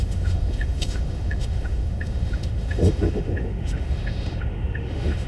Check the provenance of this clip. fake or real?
fake